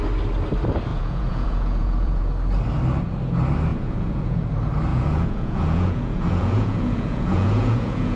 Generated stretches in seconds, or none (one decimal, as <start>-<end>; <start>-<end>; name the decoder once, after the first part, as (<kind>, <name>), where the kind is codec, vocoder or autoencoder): 0.9-2.3 (vocoder, Vocos); 3.7-4.4; 4.9-8.2